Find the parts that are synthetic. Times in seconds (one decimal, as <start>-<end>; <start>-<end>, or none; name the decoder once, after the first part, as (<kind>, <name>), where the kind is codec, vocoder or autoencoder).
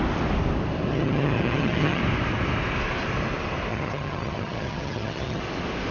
0.9-2.0 (vocoder, HiFi-GAN); 3.7-5.4